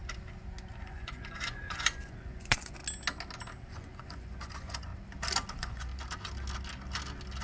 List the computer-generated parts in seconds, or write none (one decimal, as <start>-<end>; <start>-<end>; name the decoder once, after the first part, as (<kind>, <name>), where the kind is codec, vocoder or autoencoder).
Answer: 0.8-2.8 (vocoder, Vocos); 3.7-4.9; 5.5-5.9

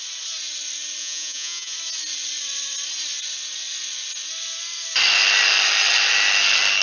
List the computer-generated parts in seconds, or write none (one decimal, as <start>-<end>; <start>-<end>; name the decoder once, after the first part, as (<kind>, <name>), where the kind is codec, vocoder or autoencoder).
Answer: 1.0-1.7 (vocoder, Vocos)

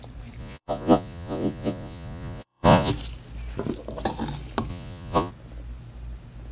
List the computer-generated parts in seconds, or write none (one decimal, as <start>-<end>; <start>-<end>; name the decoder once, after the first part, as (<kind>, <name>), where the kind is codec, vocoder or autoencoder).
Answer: 0.4-2.9 (vocoder, Vocos); 4.7-5.3

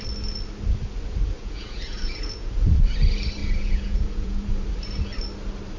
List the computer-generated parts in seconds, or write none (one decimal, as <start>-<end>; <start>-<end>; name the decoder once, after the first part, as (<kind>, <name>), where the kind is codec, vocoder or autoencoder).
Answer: 1.4-2.7 (vocoder, Vocos); 3.4-4.5